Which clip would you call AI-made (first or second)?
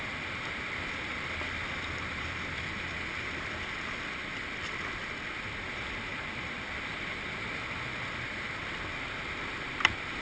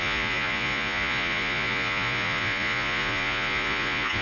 second